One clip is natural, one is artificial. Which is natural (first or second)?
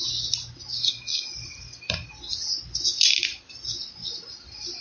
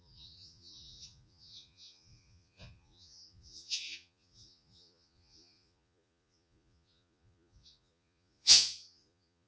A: first